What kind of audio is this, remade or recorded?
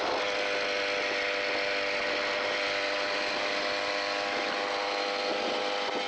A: recorded